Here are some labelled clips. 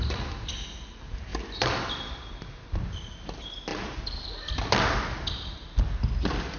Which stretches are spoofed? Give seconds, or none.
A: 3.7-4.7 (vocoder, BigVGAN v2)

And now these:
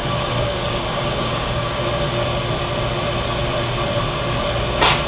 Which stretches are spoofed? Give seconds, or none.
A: 0.0-1.8 (codec, DAC)

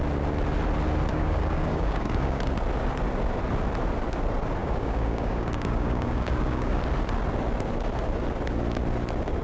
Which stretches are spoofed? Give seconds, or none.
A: 1.1-2.4 (codec, DAC); 4.6-6.8

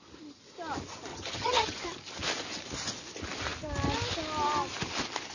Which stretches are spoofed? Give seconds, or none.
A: 1.1-1.8 (vocoder, HiFi-GAN)

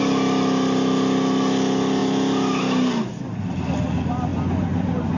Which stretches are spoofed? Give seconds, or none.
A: none

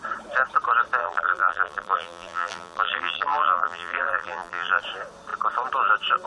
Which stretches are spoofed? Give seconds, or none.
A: 1.0-4.8 (vocoder, BigVGAN v2)

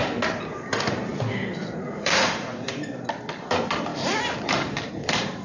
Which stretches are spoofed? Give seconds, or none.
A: 0.6-1.1 (vocoder, BigVGAN v2); 1.9-5.4

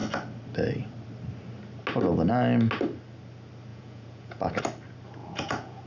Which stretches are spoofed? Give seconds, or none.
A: 3.7-4.6 (vocoder, Vocos); 5.2-5.9